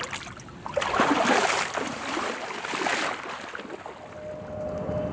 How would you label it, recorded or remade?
recorded